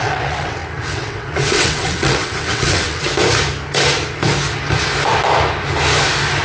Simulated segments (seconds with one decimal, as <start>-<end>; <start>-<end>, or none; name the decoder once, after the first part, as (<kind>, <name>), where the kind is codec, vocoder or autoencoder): 0.0-3.1 (vocoder, WaveNeXt)